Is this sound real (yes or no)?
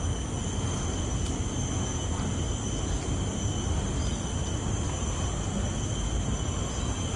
yes